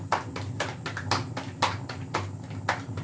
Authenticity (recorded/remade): recorded